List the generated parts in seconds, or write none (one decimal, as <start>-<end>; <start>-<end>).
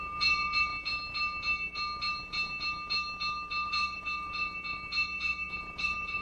0.0-0.7; 3.7-6.2